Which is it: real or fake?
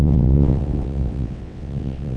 fake